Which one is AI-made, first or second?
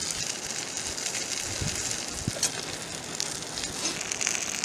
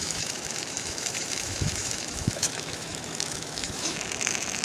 second